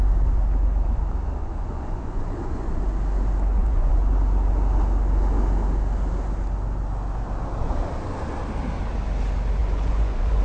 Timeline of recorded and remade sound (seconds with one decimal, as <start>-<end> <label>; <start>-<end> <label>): 0.0-1.4 recorded; 1.4-2.8 remade; 2.8-3.5 recorded; 3.5-4.0 remade; 4.0-9.6 recorded; 9.6-10.4 remade